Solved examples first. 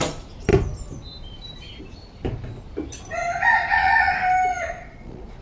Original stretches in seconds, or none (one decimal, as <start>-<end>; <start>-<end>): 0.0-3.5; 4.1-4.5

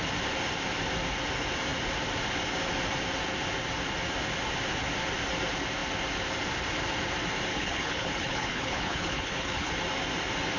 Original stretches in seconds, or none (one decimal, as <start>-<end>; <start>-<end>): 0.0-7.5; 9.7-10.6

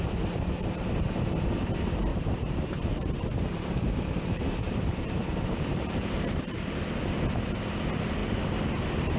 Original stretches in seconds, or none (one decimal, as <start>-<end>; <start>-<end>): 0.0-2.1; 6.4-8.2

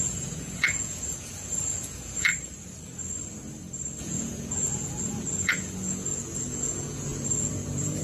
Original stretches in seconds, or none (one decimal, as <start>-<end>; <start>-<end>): 2.3-4.0

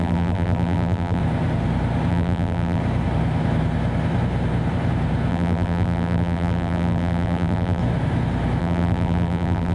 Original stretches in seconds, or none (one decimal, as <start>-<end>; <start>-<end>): 1.2-2.1; 2.8-5.3; 7.8-8.6